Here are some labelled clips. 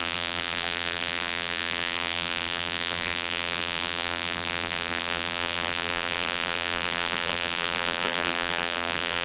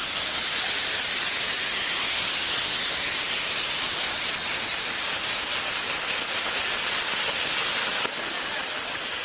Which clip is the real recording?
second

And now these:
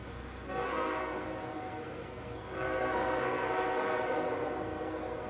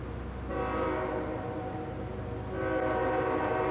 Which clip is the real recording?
second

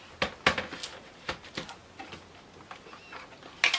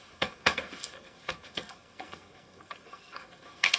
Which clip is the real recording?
first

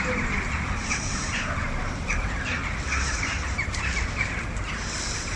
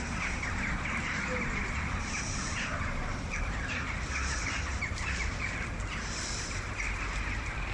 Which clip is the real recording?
first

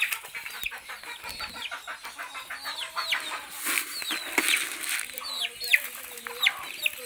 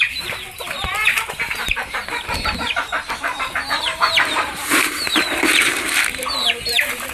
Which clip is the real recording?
first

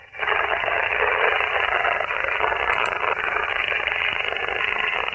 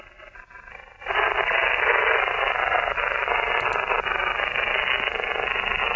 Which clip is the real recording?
second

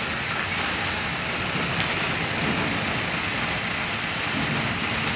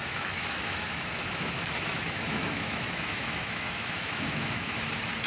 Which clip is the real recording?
first